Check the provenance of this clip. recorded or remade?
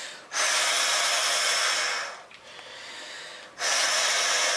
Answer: recorded